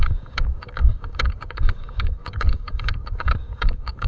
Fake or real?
fake